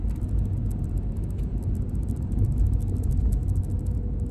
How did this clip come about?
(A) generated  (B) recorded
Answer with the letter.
B